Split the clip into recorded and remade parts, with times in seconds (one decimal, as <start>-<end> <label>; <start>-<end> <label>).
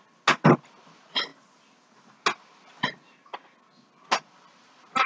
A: 0.0-5.1 recorded